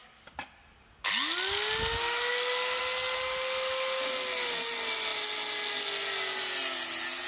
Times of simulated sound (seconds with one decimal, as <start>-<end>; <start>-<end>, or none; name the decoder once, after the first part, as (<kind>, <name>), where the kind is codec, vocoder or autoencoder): none